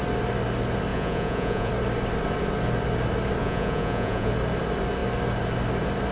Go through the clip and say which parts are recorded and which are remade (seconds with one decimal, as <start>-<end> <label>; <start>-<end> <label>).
0.0-0.9 recorded; 0.9-1.7 remade; 1.7-3.4 recorded; 3.4-4.3 remade; 4.3-6.1 recorded